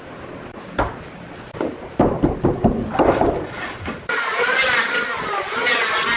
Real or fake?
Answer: real